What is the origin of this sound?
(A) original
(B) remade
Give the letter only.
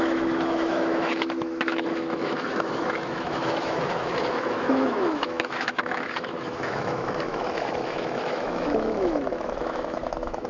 B